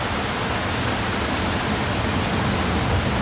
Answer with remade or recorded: recorded